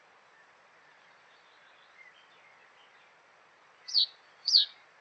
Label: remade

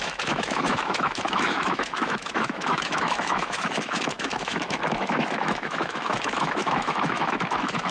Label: remade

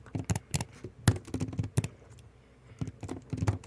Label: recorded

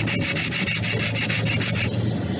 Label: recorded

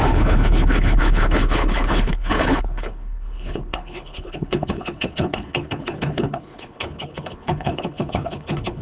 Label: remade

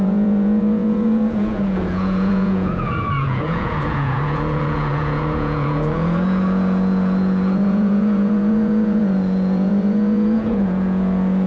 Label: remade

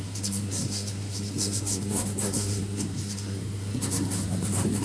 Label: remade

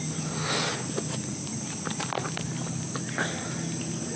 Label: recorded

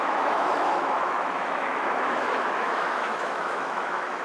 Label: remade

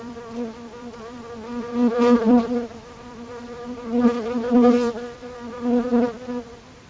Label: remade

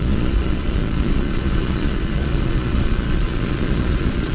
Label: remade